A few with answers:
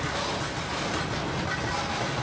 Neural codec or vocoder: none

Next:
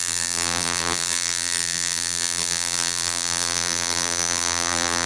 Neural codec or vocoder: vocoder, BigVGAN v2